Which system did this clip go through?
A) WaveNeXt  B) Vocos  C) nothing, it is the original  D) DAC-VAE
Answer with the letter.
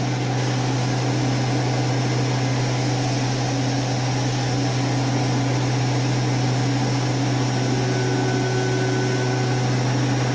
C